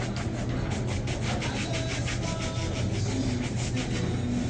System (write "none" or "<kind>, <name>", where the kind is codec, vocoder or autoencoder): none